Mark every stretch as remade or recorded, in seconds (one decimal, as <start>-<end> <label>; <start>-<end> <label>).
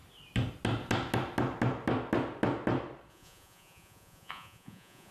0.0-3.1 recorded; 3.1-5.1 remade